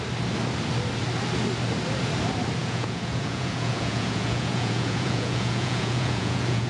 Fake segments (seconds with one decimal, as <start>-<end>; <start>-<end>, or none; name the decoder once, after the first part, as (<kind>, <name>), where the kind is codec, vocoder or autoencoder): 2.6-6.7 (vocoder, Vocos)